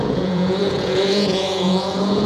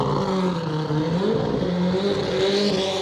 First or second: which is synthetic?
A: first